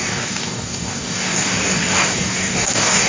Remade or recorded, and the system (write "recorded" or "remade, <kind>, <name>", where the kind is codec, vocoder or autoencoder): remade, codec, DAC